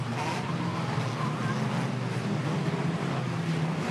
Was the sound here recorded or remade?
recorded